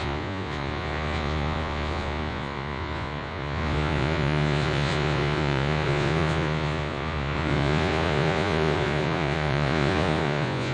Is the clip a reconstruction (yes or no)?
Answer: yes